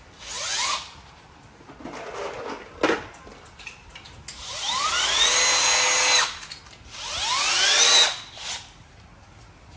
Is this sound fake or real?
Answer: real